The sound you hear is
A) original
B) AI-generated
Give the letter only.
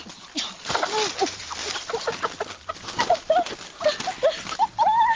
A